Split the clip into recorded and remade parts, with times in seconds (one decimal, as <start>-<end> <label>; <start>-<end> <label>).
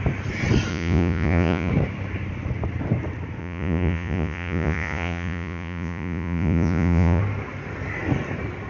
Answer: 0.0-0.7 recorded; 0.7-1.7 remade; 1.7-3.4 recorded; 3.4-7.2 remade; 7.2-8.7 recorded